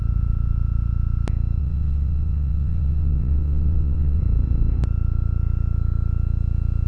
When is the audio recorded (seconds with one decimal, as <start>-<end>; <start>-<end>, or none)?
0.0-1.6; 4.2-6.9

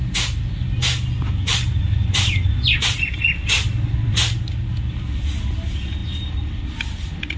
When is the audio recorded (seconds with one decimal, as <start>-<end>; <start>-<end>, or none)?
0.0-7.4